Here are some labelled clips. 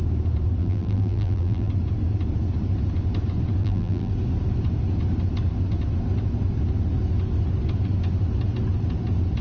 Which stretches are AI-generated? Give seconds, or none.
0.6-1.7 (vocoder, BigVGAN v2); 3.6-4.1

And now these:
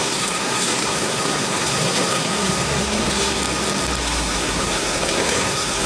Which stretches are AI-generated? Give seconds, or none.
0.0-3.4 (codec, SNAC); 4.0-5.9

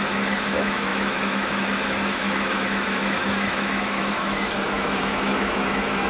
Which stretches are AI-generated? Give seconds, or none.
0.0-6.1 (autoencoder, DAC-VAE)